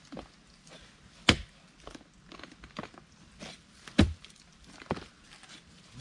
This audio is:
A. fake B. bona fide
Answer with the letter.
B